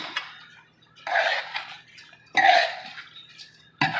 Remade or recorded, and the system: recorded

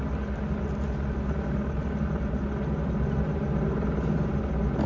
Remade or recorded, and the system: recorded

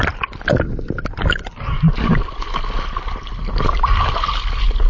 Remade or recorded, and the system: recorded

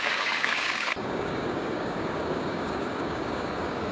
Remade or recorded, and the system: remade, codec, DAC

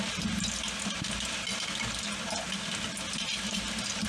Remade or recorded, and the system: recorded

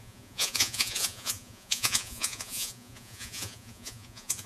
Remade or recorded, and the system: remade, vocoder, Vocos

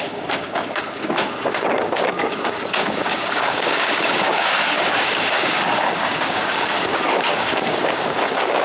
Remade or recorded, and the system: remade, codec, DAC